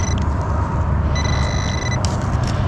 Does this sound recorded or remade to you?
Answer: recorded